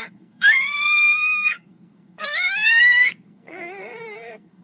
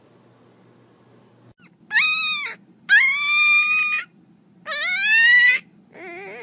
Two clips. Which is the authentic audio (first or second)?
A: second